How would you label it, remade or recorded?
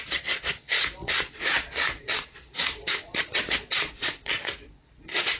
remade